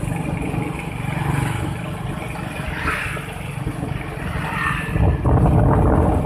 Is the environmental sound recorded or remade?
recorded